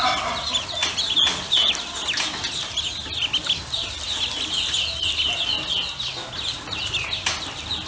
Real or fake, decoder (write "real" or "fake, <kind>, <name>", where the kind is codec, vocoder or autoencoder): real